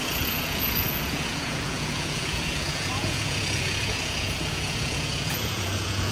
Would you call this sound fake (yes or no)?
yes